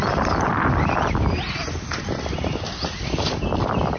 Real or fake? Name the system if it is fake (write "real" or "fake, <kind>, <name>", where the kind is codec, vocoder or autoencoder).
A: real